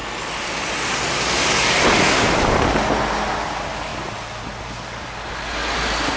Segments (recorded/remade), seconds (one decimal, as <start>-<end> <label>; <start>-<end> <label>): 0.0-6.2 recorded